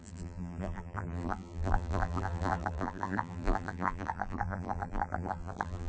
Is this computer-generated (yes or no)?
yes